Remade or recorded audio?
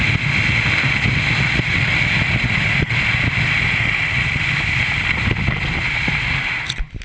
recorded